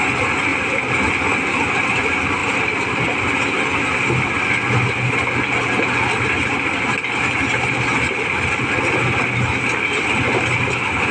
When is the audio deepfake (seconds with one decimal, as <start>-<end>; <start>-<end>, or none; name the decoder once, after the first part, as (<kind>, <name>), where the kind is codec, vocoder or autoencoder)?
none